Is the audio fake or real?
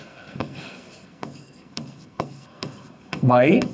fake